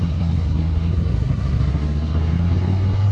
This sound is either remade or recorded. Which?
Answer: remade